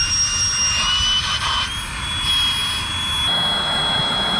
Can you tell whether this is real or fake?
real